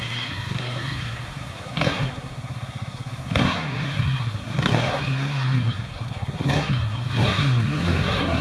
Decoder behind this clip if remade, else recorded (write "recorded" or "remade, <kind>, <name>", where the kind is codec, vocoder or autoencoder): remade, codec, SNAC